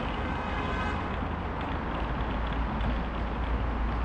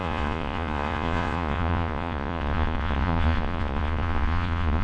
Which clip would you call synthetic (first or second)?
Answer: second